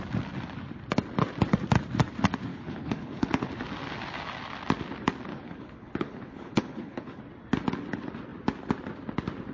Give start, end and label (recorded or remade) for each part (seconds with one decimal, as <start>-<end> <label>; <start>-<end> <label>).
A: 0.0-2.5 recorded; 2.5-3.5 remade; 3.5-5.3 recorded; 5.3-7.2 remade; 7.2-9.5 recorded

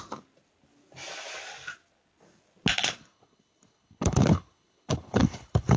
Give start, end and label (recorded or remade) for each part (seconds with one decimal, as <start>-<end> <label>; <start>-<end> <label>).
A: 0.0-2.8 recorded; 2.8-5.8 remade

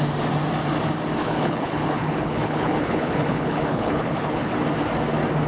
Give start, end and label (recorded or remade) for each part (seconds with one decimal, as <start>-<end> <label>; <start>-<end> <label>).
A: 0.0-1.2 recorded; 1.2-4.5 remade; 4.5-5.5 recorded

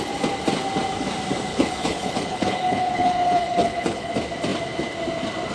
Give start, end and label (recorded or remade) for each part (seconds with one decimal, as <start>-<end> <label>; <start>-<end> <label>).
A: 0.0-1.5 recorded; 1.5-4.1 remade; 4.1-5.5 recorded